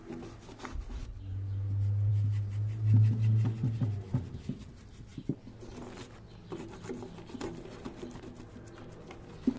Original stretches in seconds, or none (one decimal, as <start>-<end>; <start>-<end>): 0.0-9.6